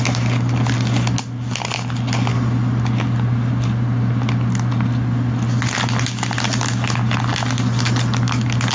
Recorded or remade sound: recorded